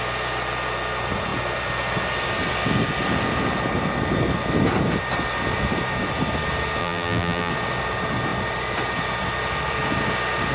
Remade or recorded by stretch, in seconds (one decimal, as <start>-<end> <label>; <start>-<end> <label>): 0.0-6.8 recorded; 6.8-7.5 remade; 7.5-10.5 recorded